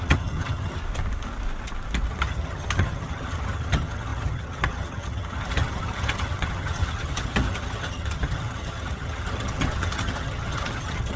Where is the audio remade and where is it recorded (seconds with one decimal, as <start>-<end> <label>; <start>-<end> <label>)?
0.0-0.8 remade; 0.8-2.1 recorded; 2.1-11.2 remade